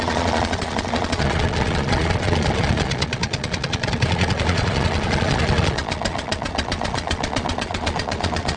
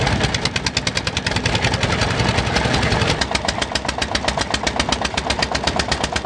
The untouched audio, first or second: second